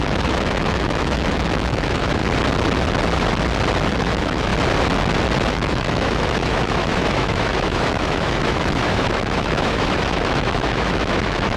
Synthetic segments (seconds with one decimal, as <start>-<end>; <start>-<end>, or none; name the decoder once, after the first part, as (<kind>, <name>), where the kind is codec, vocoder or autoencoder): 0.0-2.2 (autoencoder, DAC-VAE); 3.9-4.5; 5.5-11.6